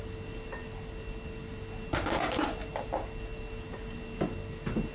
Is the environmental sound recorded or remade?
recorded